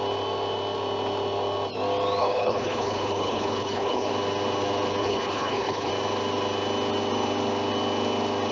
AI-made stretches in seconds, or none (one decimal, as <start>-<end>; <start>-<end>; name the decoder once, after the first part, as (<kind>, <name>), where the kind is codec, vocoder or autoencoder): 2.2-4.1 (codec, HILCodec); 5.0-5.9